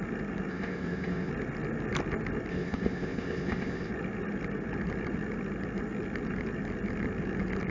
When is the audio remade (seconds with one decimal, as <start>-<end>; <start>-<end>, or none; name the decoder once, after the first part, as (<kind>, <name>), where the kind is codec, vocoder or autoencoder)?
0.5-1.3 (codec, ZipCodec); 2.5-3.9